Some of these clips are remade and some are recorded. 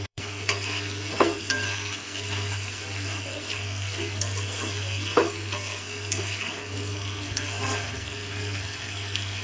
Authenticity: remade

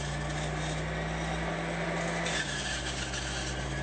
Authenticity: recorded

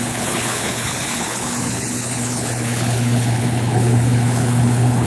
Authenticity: remade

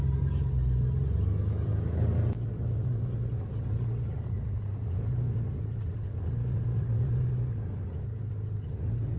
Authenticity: recorded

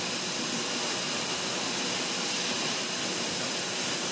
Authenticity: recorded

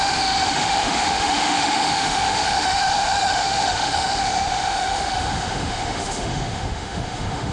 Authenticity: remade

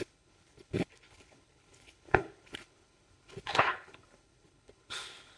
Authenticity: remade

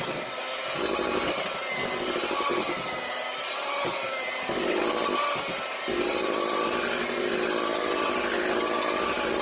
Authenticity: recorded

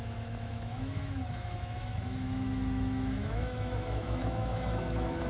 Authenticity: remade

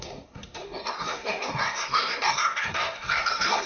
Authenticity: remade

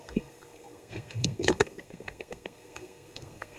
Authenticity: remade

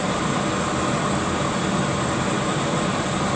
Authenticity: recorded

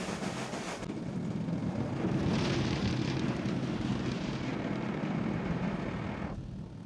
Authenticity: recorded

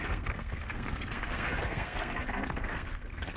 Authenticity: remade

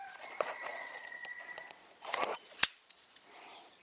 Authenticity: remade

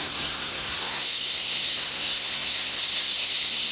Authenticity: remade